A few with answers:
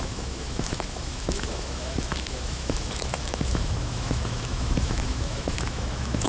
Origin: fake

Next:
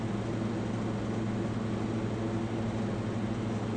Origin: real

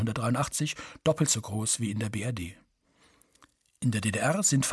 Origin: real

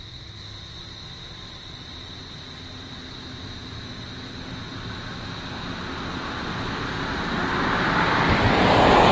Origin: real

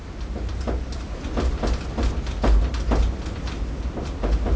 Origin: real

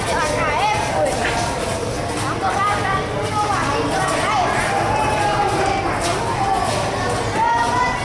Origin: real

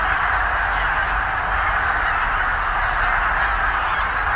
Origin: real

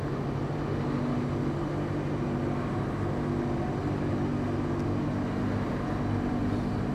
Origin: real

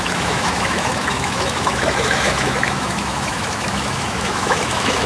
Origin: fake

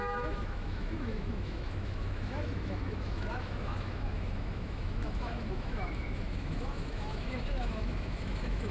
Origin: fake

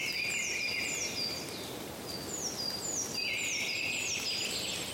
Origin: real